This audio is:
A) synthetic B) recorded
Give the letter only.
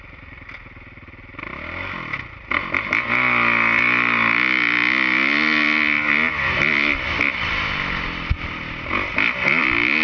B